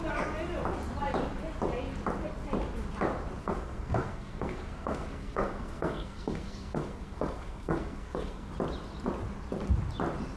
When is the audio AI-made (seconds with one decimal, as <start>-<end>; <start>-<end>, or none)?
3.4-8.5